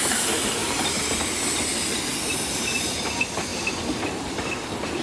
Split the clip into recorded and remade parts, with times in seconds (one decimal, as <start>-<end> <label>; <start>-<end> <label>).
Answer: 0.0-0.6 recorded; 0.6-1.4 remade; 1.4-2.1 recorded; 2.1-3.1 remade; 3.1-5.0 recorded

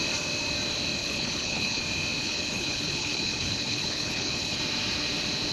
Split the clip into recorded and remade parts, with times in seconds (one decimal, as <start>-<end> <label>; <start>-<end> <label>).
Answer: 0.0-1.0 recorded; 1.0-1.8 remade; 1.8-2.2 recorded; 2.2-4.6 remade; 4.6-5.5 recorded

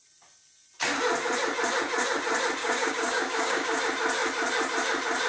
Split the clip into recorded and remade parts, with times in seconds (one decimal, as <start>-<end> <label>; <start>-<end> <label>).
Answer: 0.0-2.6 recorded; 2.6-3.8 remade; 3.8-5.3 recorded

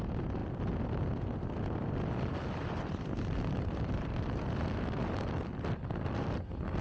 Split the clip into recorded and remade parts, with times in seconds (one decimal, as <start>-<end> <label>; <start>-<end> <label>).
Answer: 0.0-2.6 recorded; 2.6-4.4 remade; 4.4-6.8 recorded

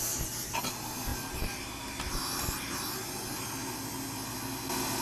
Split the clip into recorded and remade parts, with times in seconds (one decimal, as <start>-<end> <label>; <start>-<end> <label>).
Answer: 0.0-5.0 recorded

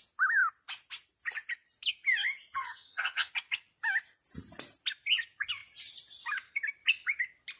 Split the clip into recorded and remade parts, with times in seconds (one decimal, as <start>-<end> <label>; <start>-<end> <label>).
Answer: 0.0-2.6 recorded; 2.6-3.3 remade; 3.3-7.6 recorded